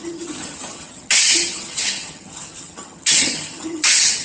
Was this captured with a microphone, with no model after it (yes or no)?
no